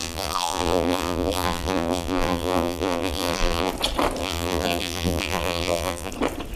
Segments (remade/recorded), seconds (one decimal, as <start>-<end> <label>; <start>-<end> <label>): 0.0-3.7 remade; 3.7-4.2 recorded; 4.2-6.1 remade; 6.1-6.6 recorded